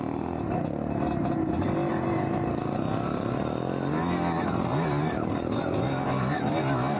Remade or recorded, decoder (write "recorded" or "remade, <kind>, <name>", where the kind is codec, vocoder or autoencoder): recorded